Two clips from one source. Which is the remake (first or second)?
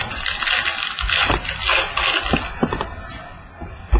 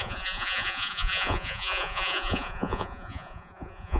second